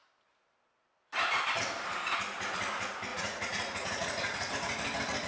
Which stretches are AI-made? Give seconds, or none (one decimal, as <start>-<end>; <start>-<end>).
3.1-4.5